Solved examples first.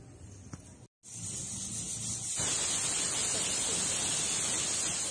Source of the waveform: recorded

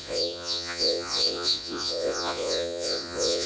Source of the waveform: remade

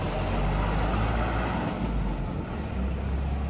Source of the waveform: recorded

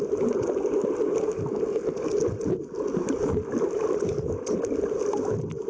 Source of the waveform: recorded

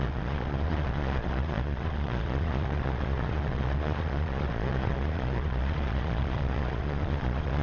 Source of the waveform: remade